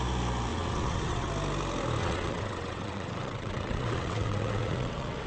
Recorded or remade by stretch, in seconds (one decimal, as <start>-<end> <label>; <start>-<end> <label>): 0.0-0.5 recorded; 0.5-1.3 remade; 1.3-2.0 recorded; 2.0-5.3 remade